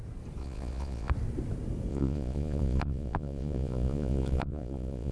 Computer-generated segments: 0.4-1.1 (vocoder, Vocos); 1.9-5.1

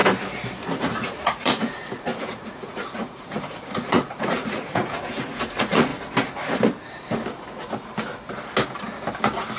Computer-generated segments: 0.8-5.9 (vocoder, Vocos)

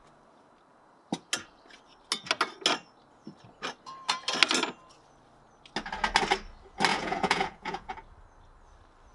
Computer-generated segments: 6.9-7.9 (vocoder, Vocos)

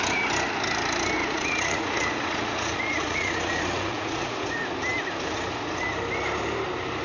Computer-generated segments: 1.2-4.5 (vocoder, Vocos)

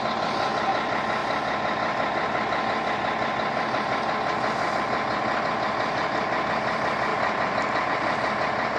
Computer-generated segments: none